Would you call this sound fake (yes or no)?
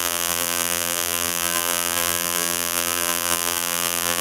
yes